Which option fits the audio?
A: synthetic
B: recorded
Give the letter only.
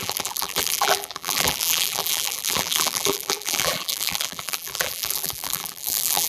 A